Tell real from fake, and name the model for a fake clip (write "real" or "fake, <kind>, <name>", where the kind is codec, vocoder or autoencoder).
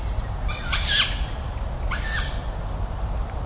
real